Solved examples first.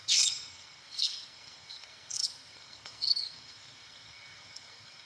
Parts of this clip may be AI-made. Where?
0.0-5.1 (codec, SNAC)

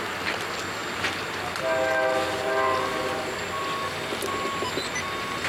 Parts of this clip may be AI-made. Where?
none